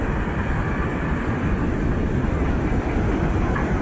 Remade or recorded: recorded